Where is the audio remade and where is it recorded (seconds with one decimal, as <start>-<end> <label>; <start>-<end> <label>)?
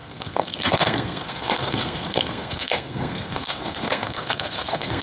0.0-5.0 remade